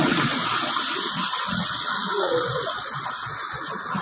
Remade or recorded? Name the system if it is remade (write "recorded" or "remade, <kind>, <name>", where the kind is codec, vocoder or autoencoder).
remade, vocoder, Vocos